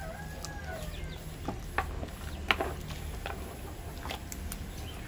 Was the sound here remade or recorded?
recorded